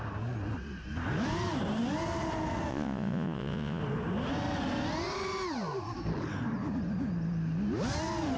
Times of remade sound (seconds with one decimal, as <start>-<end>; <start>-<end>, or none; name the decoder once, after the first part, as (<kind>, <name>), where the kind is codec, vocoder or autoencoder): 2.7-3.8 (vocoder, Vocos)